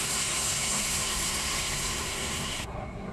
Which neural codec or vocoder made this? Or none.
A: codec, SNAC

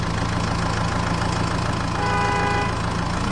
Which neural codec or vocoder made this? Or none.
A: none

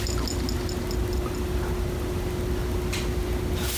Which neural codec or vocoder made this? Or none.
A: none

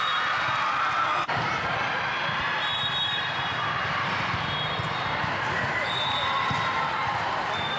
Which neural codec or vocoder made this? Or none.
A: vocoder, BigVGAN v2